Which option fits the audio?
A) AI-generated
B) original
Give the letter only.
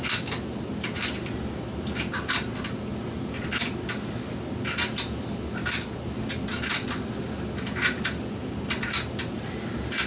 B